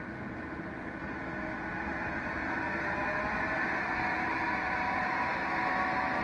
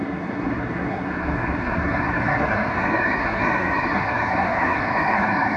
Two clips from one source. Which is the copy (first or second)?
second